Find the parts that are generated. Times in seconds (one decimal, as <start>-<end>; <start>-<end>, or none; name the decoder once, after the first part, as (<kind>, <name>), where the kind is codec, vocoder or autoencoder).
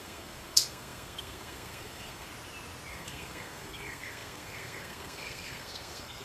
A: 0.0-2.3 (codec, SNAC); 2.9-6.2